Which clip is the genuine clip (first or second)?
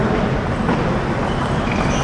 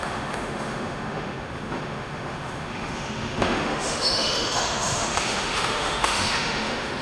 first